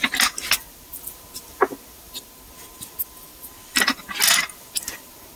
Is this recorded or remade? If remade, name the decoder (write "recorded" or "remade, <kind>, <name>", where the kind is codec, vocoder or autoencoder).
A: recorded